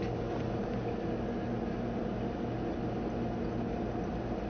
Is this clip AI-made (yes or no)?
no